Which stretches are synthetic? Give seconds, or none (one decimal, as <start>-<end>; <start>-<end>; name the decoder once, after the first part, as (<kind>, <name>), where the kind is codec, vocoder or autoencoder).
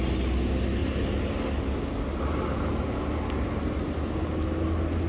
none